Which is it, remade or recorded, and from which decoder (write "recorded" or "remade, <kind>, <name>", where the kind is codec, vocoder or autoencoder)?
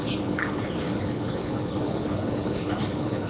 remade, codec, HILCodec